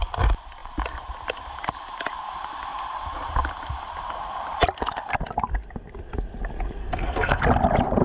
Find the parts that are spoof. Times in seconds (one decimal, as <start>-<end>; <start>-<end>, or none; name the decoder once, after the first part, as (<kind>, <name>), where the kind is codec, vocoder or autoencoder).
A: 6.8-7.4 (codec, SNAC)